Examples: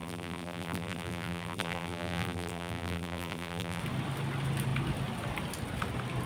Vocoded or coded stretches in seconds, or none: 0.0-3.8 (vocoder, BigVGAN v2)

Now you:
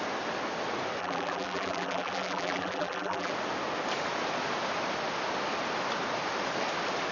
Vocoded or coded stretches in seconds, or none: 1.0-3.3 (vocoder, BigVGAN v2)

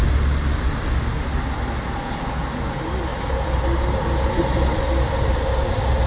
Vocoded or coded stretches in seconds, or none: 3.1-3.6 (vocoder, BigVGAN v2)

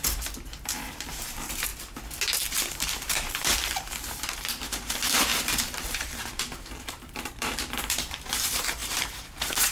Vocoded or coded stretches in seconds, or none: 0.0-1.7 (vocoder, BigVGAN v2); 2.7-9.7

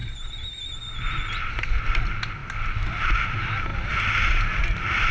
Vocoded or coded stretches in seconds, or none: 0.0-1.5 (vocoder, BigVGAN v2)

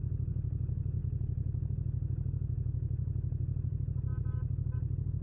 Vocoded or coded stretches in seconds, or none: none

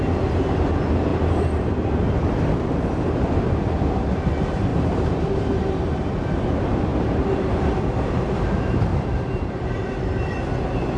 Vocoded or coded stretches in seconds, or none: 1.1-1.7 (vocoder, BigVGAN v2); 4.7-6.4; 6.9-8.5; 8.9-10.1

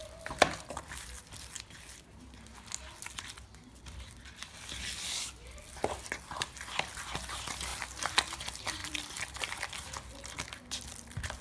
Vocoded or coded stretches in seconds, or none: 8.8-9.7 (vocoder, BigVGAN v2)